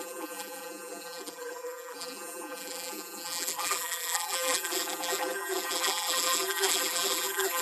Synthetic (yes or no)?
yes